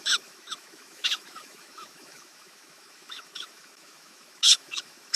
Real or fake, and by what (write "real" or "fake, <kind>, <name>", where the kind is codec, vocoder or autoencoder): fake, autoencoder, DAC-VAE